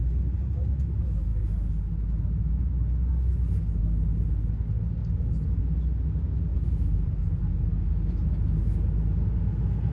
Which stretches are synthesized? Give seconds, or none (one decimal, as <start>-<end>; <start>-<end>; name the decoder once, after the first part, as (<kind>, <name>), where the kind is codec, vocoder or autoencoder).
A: 6.5-7.4 (vocoder, BigVGAN v2)